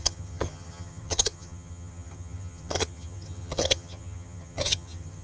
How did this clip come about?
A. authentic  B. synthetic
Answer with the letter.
B